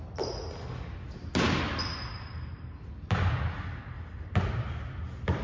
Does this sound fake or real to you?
real